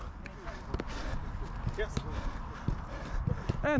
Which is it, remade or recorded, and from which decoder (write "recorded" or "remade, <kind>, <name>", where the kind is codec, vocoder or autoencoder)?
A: recorded